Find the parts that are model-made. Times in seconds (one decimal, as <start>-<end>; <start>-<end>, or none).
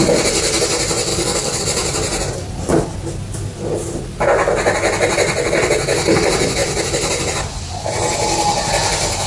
1.1-1.6